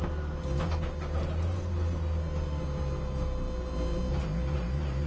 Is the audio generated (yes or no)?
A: no